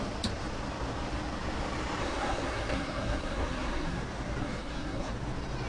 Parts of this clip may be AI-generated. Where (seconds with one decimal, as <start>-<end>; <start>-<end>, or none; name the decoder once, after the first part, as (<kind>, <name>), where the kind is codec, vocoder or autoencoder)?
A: 2.0-4.0 (codec, SNAC); 4.4-5.1